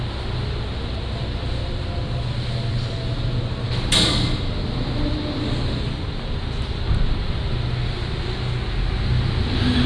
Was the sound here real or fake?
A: real